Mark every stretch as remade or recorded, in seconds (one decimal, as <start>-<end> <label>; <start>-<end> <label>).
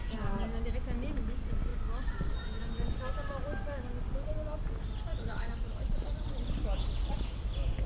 0.0-5.1 recorded; 5.1-6.5 remade; 6.5-7.9 recorded